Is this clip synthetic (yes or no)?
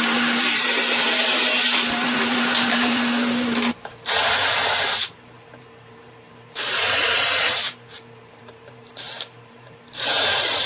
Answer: yes